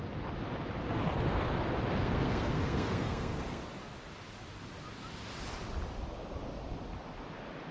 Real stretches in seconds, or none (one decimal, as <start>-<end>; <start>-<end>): 0.0-2.0; 3.6-7.7